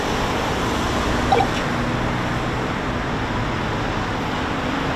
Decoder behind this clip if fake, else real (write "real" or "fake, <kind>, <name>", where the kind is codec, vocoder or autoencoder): real